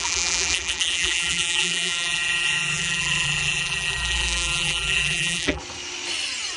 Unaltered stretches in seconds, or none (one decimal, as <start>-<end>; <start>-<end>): 5.6-6.6

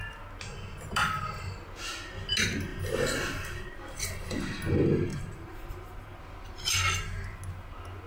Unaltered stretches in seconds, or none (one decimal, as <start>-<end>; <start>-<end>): 0.0-5.1; 6.2-8.1

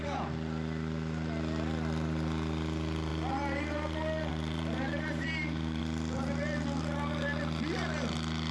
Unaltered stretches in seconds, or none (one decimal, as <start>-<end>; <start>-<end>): 0.0-4.3; 5.8-8.5

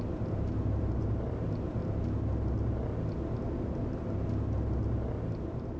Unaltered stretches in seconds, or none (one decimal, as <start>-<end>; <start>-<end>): 1.8-5.3

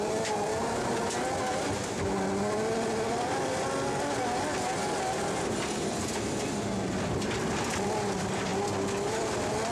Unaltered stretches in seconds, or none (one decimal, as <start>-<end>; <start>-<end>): 0.5-5.4; 8.5-9.1

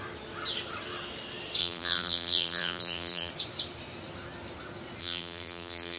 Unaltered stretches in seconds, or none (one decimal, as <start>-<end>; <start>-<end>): 0.0-1.6; 3.3-5.0

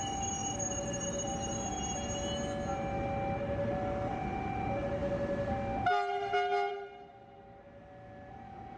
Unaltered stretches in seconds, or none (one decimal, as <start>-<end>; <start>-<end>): 0.0-8.8

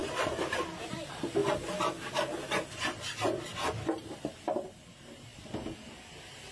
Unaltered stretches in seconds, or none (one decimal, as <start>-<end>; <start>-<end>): 0.0-0.9; 1.4-4.2